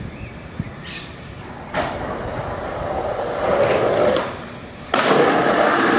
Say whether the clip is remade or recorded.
recorded